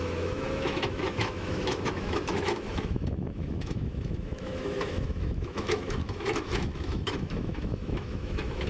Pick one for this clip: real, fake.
fake